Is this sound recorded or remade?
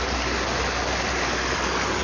recorded